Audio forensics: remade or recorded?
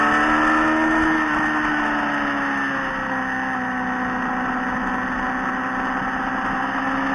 recorded